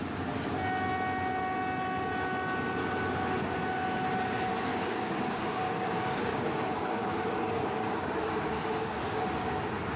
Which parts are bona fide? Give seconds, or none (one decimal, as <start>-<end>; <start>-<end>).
0.0-4.7; 9.2-10.0